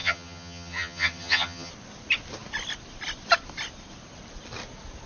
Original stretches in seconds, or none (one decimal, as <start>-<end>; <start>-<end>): 1.7-5.1